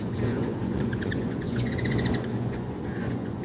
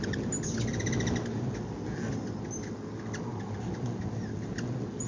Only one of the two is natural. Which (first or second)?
second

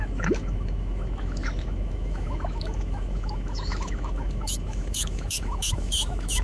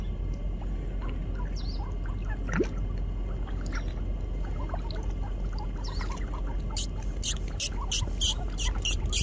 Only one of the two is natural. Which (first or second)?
second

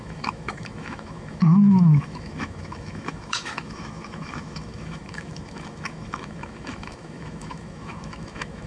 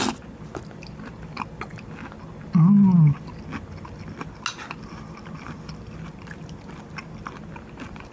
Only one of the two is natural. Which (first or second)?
second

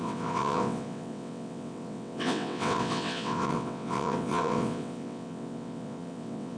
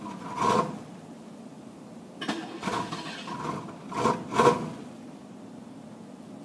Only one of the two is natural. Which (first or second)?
second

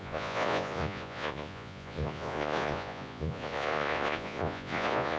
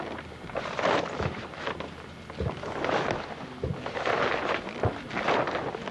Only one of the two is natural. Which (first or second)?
second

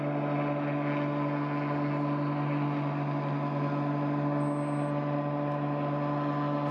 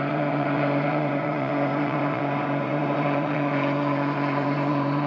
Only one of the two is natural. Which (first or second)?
first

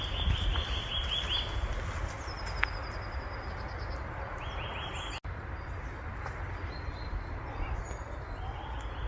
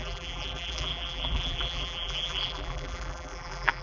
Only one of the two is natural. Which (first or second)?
first